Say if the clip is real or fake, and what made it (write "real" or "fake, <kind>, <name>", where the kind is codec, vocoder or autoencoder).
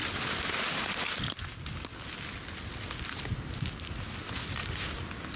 real